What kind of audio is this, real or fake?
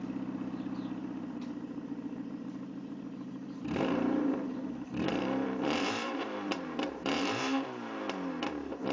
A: fake